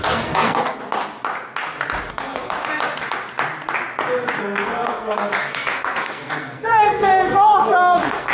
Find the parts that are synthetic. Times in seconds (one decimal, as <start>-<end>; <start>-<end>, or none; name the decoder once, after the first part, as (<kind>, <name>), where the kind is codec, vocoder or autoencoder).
0.0-0.8 (codec, SNAC); 2.1-2.7; 4.4-8.3